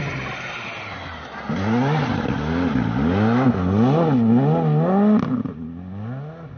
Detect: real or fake real